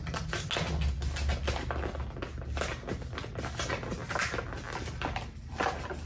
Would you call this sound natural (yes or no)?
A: yes